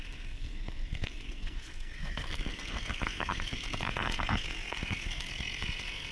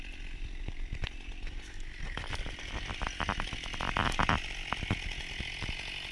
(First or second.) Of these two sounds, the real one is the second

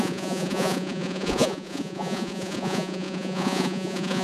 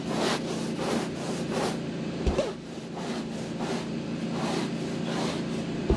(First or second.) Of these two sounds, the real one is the second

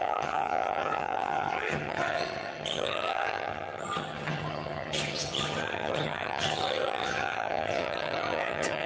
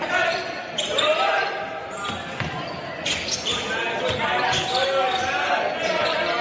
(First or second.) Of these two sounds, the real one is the second